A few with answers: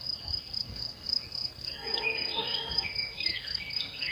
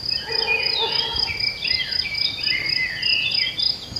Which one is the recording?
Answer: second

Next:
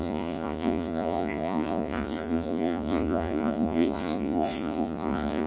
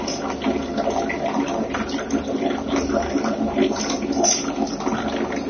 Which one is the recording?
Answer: second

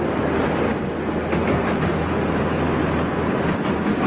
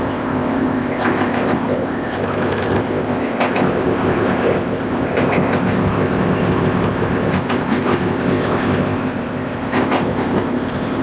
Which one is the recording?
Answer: first